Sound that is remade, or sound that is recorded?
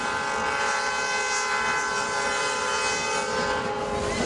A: recorded